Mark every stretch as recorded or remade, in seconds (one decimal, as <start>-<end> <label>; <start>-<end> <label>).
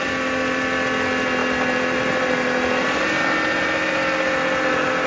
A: 0.0-5.1 recorded